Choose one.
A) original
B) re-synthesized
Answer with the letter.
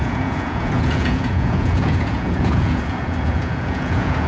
B